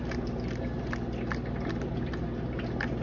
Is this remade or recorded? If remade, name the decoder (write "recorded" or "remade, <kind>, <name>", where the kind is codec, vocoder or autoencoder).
recorded